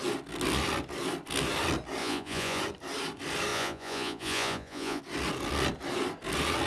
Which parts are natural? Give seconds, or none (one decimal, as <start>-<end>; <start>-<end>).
0.0-2.0; 2.6-3.5; 5.0-6.7